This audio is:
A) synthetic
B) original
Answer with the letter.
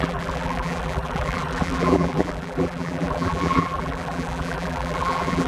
A